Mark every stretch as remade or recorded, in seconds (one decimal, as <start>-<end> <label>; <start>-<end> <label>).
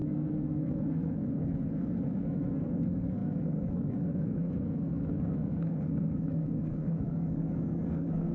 0.0-8.3 remade